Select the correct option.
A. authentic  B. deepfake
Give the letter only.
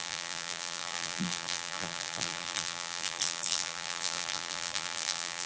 B